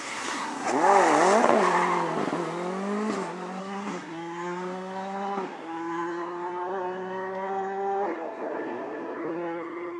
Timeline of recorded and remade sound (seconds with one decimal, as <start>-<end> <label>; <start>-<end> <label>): 0.0-0.7 remade; 0.7-3.6 recorded; 3.6-10.0 remade